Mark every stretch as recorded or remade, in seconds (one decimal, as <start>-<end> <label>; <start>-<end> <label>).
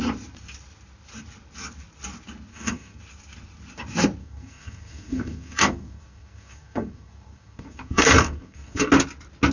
0.0-2.5 recorded; 2.5-3.0 remade; 3.0-4.2 recorded; 4.2-8.9 remade; 8.9-9.5 recorded